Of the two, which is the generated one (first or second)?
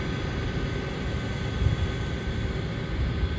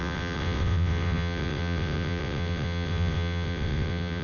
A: second